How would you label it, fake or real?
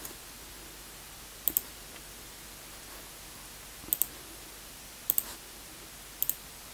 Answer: real